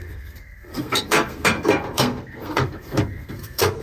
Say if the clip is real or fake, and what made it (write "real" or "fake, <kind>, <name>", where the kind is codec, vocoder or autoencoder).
fake, codec, SNAC